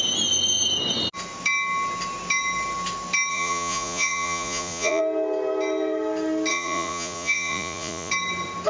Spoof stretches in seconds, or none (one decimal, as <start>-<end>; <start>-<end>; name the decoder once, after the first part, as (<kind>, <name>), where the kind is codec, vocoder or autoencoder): 3.3-5.0 (vocoder, Vocos); 6.5-8.1